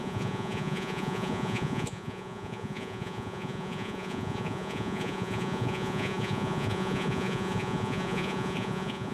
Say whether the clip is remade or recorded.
remade